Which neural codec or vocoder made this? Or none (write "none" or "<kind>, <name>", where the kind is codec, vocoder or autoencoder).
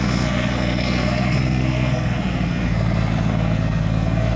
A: codec, SNAC